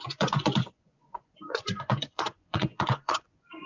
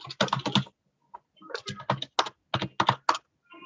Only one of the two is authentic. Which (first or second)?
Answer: second